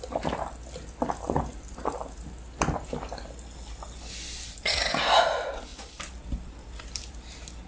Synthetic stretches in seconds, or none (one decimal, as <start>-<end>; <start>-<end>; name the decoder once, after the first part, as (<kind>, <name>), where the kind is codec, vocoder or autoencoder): 5.7-7.1 (vocoder, BigVGAN v2)